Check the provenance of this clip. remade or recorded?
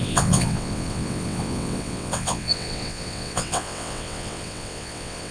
remade